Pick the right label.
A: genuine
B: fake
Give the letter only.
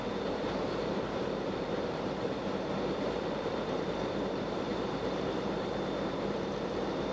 B